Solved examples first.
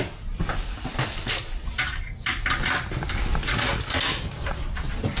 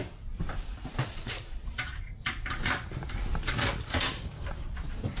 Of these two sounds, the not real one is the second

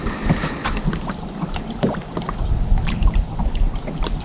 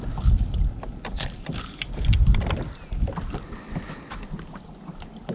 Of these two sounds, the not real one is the first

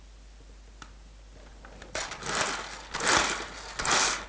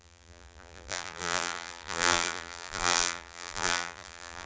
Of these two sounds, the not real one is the second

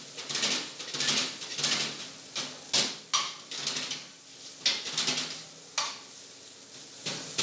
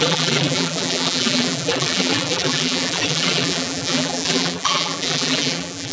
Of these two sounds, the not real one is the second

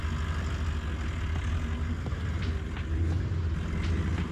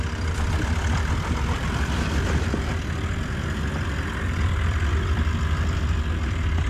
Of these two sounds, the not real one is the second